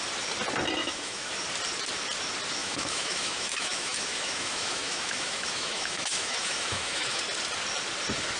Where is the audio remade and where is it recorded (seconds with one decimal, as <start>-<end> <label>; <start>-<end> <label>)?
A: 0.0-0.8 recorded; 0.8-1.3 remade; 1.3-2.6 recorded; 2.6-7.2 remade; 7.2-8.4 recorded